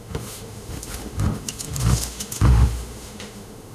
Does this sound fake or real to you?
fake